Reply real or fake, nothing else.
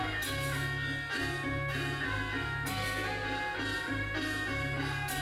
real